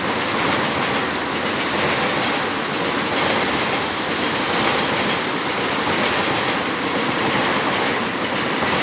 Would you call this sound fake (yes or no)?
no